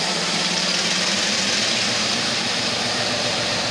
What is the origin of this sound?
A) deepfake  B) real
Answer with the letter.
A